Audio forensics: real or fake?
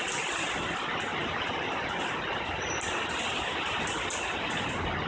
real